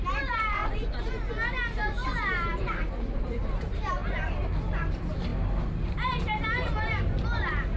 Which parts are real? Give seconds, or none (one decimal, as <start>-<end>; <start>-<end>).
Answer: 0.6-2.6; 4.0-4.6